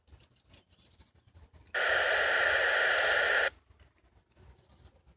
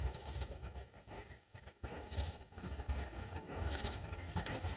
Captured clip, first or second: first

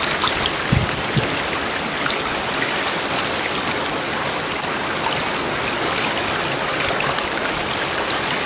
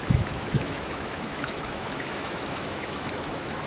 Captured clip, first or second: first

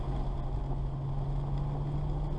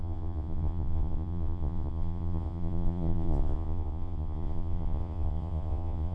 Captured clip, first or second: first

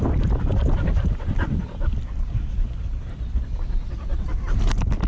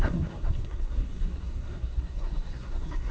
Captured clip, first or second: first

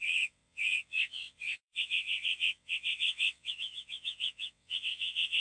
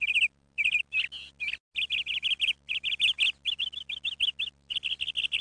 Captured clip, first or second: second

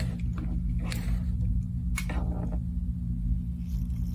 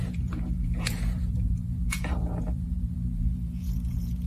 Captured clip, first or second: first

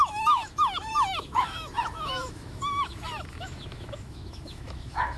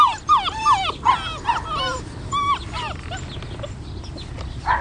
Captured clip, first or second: second